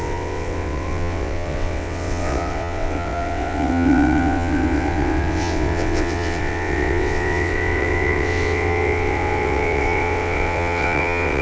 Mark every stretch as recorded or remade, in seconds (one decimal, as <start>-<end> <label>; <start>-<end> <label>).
0.0-11.4 remade